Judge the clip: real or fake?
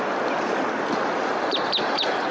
real